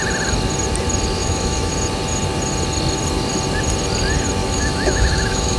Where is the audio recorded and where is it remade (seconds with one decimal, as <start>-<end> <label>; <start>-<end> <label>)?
0.0-1.2 recorded; 1.2-1.7 remade; 1.7-4.4 recorded; 4.4-5.6 remade

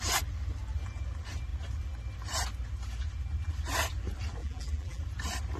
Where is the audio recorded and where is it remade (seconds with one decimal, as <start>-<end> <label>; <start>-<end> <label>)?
0.0-4.4 recorded; 4.4-5.0 remade; 5.0-5.6 recorded

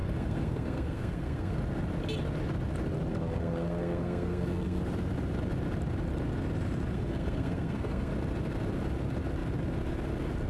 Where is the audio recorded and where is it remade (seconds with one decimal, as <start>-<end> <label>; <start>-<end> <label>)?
0.0-1.6 remade; 1.6-3.1 recorded; 3.1-4.8 remade; 4.8-6.9 recorded; 6.9-8.1 remade; 8.1-10.5 recorded

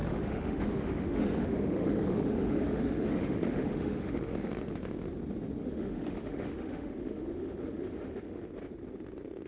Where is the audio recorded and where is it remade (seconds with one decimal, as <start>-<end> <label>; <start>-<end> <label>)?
0.0-4.5 remade; 4.5-5.6 recorded; 5.6-8.4 remade; 8.4-9.5 recorded

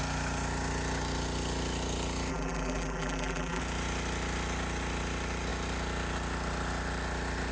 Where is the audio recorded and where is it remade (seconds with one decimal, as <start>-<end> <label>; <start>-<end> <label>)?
0.0-2.3 recorded; 2.3-3.6 remade; 3.6-7.5 recorded

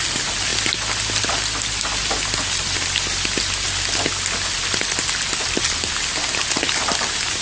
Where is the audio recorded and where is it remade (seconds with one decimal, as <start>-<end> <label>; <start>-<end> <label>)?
0.0-7.4 recorded